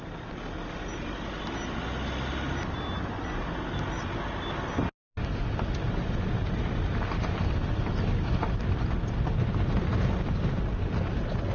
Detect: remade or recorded recorded